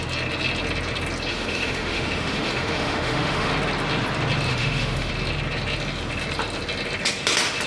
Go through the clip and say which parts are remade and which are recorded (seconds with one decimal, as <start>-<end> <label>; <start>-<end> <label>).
0.0-1.3 recorded; 1.3-3.5 remade; 3.5-4.5 recorded; 4.5-5.1 remade; 5.1-7.7 recorded